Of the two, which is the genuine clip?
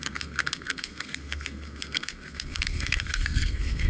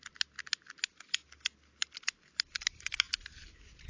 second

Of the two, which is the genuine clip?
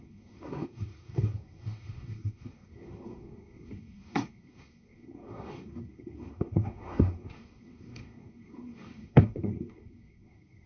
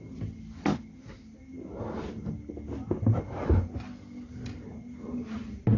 second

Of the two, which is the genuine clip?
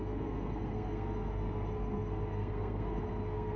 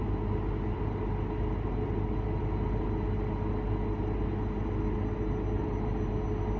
second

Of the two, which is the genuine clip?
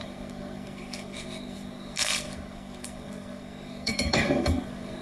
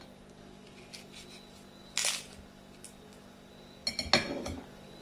second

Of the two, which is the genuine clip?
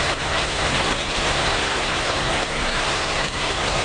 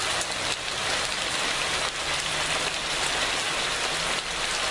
second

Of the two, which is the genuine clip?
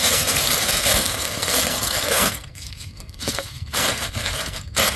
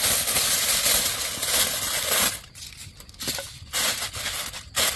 second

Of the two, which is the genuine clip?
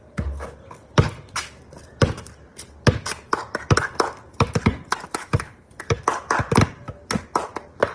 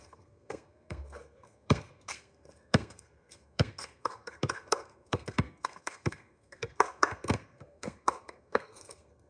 first